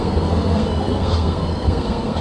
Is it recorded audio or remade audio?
remade